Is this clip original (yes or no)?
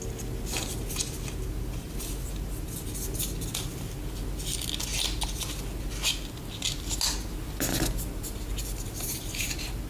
yes